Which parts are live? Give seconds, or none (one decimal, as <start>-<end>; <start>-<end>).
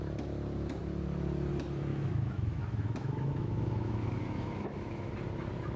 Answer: 0.0-1.9; 5.1-5.8